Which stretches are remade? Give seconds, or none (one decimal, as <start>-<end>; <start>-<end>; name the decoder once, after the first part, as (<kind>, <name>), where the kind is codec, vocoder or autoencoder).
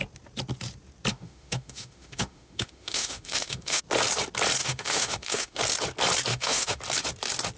1.1-3.8 (autoencoder, DAC-VAE); 4.6-5.6; 6.3-6.8